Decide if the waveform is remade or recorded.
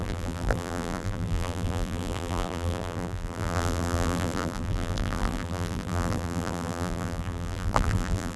remade